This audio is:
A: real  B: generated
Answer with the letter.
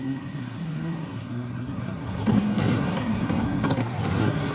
B